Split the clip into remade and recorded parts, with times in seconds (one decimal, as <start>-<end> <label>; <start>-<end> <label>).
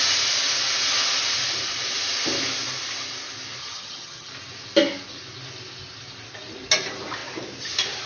0.0-3.6 recorded; 3.6-4.3 remade; 4.3-8.1 recorded